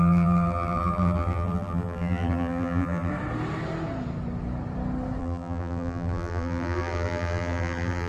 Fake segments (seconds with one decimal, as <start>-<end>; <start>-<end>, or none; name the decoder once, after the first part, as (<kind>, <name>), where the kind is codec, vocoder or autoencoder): 0.0-3.1 (vocoder, BigVGAN v2); 5.2-8.1